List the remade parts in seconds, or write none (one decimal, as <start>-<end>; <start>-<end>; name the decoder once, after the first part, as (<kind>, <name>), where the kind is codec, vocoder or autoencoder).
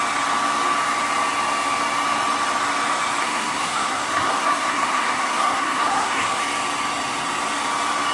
3.2-6.4 (codec, SNAC)